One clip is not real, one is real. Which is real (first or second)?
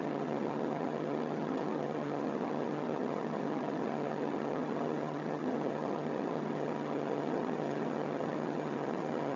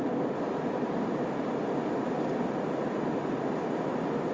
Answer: second